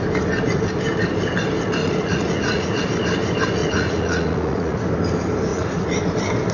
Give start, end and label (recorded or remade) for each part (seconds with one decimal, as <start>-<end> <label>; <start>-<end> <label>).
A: 0.0-1.8 recorded; 1.8-2.8 remade; 2.8-3.6 recorded; 3.6-4.8 remade; 4.8-5.5 recorded; 5.5-6.0 remade; 6.0-6.5 recorded